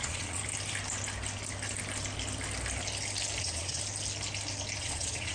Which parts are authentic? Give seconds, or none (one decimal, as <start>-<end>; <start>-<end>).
0.4-3.4; 3.8-4.8